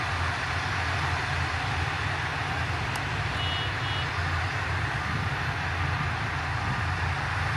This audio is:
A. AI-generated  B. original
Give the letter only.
B